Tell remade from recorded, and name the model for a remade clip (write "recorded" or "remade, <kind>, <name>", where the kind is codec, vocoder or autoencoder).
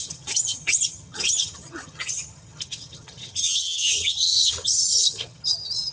remade, vocoder, HiFi-GAN